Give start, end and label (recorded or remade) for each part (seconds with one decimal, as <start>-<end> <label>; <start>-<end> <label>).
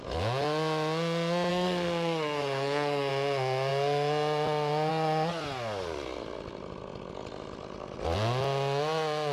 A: 0.0-1.5 recorded; 1.5-3.1 remade; 3.1-9.3 recorded